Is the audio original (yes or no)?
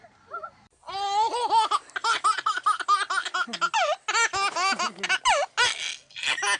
yes